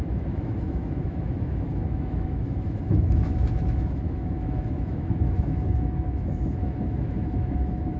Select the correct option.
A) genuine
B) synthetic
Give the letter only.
B